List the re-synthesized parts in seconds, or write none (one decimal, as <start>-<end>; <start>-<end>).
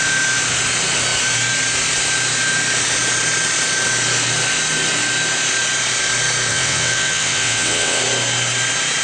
6.5-8.0